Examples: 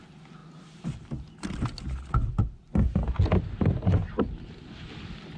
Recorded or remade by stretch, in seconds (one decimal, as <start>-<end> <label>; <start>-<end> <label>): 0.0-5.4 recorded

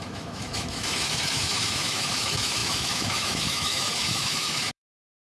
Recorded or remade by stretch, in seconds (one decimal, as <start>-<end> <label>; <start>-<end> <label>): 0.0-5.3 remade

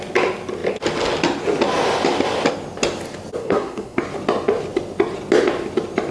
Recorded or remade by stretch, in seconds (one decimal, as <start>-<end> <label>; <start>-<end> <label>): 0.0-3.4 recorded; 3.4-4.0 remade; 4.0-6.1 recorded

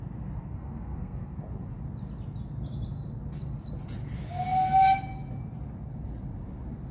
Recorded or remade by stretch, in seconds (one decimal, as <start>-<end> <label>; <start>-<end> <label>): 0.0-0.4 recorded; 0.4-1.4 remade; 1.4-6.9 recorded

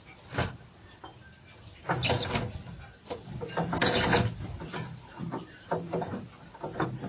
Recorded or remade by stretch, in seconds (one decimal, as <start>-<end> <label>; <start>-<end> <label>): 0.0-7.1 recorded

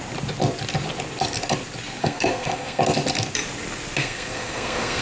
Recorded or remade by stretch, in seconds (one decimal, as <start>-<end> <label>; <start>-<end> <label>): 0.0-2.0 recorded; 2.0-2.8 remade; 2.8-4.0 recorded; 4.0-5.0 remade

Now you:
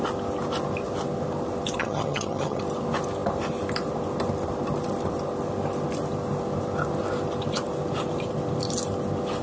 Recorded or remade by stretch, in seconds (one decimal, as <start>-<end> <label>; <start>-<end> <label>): 0.0-1.8 recorded; 1.8-2.6 remade; 2.6-9.4 recorded

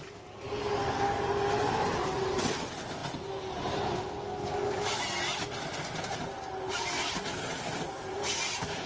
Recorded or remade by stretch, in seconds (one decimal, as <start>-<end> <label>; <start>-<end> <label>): 0.0-8.9 recorded